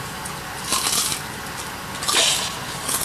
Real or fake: real